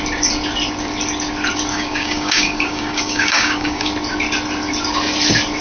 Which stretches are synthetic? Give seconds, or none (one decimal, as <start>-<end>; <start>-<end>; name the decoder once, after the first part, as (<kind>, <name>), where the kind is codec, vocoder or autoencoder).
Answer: 1.7-3.9 (codec, DAC)